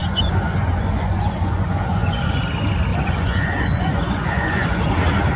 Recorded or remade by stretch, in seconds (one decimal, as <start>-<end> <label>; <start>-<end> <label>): 0.0-2.4 remade; 2.4-2.9 recorded; 2.9-4.8 remade; 4.8-5.4 recorded

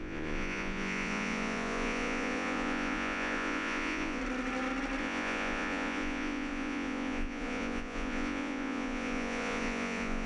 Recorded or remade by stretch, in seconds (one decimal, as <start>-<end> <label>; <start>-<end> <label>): 0.0-4.2 remade; 4.2-5.0 recorded; 5.0-10.3 remade

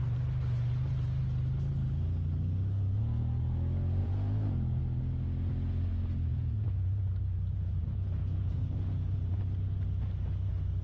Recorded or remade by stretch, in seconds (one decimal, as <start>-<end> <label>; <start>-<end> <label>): 0.0-4.0 recorded; 4.0-4.8 remade; 4.8-6.3 recorded; 6.3-9.4 remade; 9.4-10.8 recorded

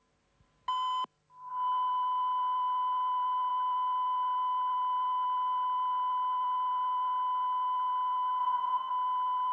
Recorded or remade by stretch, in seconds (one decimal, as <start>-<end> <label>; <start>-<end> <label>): 0.0-8.4 recorded; 8.4-8.9 remade; 8.9-9.5 recorded

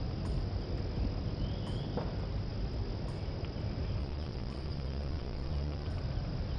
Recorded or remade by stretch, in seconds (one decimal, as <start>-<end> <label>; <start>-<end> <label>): 0.0-4.0 recorded; 4.0-5.9 remade; 5.9-6.6 recorded

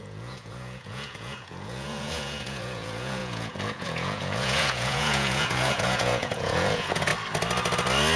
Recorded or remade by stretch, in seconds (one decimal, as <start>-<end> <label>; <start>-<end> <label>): 0.0-7.1 remade; 7.1-8.2 recorded

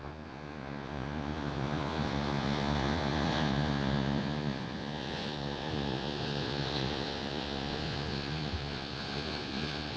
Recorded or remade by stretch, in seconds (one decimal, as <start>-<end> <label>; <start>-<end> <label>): 0.0-10.0 remade

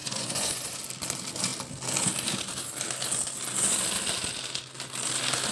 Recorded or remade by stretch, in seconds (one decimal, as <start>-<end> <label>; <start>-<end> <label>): 0.0-0.8 remade; 0.8-5.5 recorded